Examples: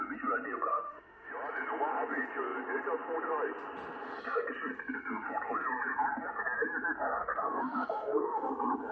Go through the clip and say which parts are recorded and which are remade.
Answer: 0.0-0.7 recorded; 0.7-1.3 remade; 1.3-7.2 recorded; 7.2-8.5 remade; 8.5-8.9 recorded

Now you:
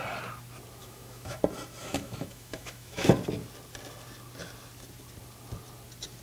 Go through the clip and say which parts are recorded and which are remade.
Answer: 0.0-0.8 recorded; 0.8-1.4 remade; 1.4-1.8 recorded; 1.8-3.1 remade; 3.1-6.2 recorded

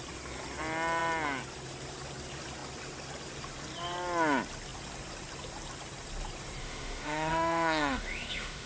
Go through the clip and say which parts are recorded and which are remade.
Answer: 0.0-6.6 recorded; 6.6-8.7 remade